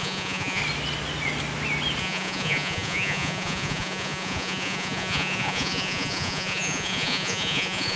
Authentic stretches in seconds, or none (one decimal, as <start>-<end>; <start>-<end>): 0.6-2.0